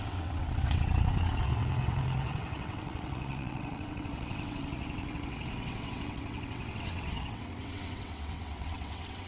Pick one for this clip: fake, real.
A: fake